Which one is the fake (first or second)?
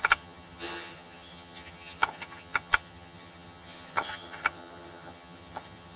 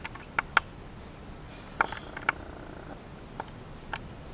first